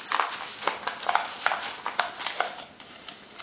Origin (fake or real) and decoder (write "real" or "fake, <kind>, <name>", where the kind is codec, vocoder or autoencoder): real